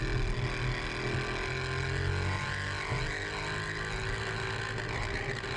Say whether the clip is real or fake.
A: real